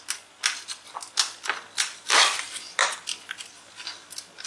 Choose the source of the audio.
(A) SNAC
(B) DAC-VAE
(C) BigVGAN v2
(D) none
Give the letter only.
D